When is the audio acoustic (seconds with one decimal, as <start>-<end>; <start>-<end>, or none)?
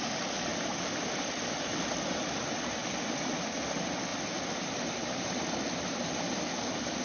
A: 0.0-7.0